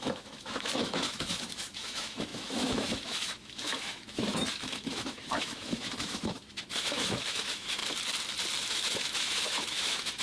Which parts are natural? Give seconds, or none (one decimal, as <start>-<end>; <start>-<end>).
7.8-8.7